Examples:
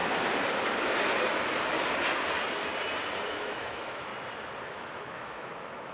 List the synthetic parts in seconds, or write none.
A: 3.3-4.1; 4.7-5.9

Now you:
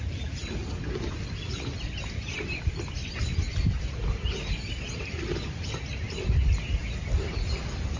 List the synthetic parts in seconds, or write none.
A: none

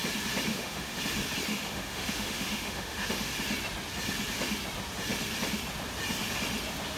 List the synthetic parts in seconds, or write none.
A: 0.5-1.0; 1.5-3.3